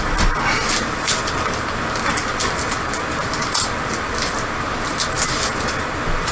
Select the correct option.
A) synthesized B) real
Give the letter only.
B